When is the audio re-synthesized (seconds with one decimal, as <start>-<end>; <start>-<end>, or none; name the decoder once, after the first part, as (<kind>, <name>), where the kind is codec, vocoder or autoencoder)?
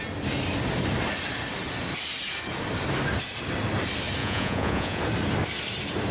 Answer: 4.2-5.0 (vocoder, Vocos)